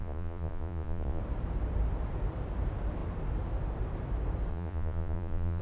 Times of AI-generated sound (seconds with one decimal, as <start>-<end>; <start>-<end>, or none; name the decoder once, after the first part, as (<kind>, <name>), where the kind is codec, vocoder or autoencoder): 0.0-1.2 (vocoder, Vocos); 4.5-5.6